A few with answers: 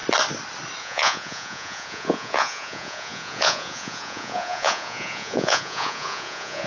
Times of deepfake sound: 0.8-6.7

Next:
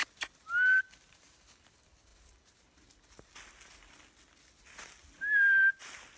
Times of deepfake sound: none

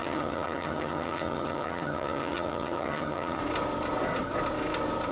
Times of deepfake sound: 0.0-3.4

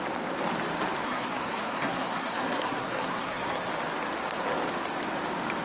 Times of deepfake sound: 1.0-3.7

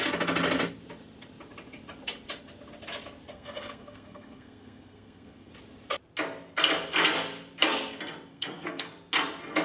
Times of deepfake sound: 3.3-5.5; 8.3-8.9